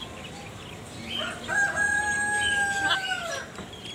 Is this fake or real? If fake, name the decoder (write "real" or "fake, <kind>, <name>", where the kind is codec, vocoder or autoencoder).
real